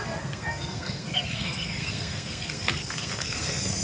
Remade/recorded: remade